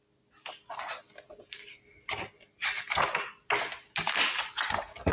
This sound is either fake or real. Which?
real